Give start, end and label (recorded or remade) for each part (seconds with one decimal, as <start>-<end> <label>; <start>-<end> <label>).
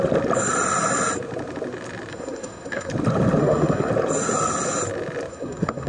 0.0-2.1 recorded; 2.1-2.9 remade; 2.9-3.4 recorded; 3.4-3.9 remade; 3.9-5.3 recorded; 5.3-5.9 remade